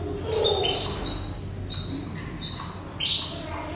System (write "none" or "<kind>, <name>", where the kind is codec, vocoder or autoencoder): none